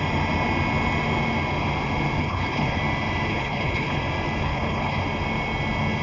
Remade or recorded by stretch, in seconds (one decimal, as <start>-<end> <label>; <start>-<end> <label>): 0.0-2.2 recorded; 2.2-2.8 remade; 2.8-3.3 recorded; 3.3-4.0 remade; 4.0-4.4 recorded; 4.4-5.0 remade; 5.0-6.0 recorded